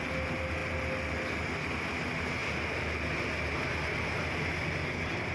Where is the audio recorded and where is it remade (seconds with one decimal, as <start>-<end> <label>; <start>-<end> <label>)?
0.0-5.3 recorded